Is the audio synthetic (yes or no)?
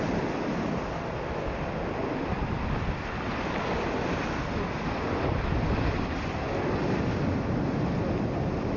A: no